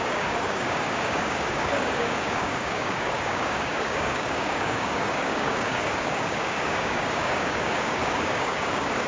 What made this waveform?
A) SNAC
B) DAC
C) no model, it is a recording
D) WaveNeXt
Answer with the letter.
B